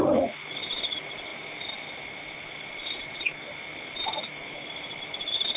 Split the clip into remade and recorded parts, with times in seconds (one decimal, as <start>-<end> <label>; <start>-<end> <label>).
0.0-5.6 remade